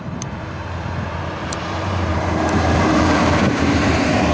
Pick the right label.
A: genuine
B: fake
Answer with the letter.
B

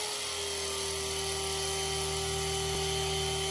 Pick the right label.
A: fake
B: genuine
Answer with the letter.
B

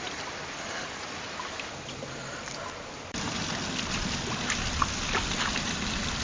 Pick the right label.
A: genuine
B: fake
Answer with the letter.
A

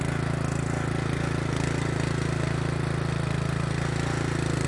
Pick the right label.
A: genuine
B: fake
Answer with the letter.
A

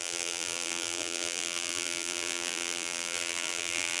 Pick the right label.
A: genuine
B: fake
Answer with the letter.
B